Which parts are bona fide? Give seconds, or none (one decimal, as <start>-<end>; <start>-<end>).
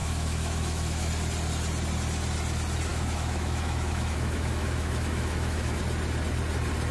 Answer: 1.1-2.9; 5.8-6.9